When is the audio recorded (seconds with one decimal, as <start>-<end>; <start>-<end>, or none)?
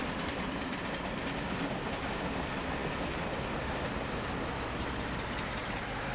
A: 0.0-6.1